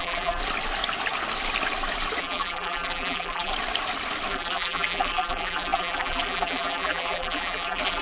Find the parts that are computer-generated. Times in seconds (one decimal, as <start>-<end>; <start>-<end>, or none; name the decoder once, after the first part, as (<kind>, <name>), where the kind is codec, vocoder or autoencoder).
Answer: 0.0-0.4 (vocoder, BigVGAN v2); 2.2-3.5; 4.3-8.0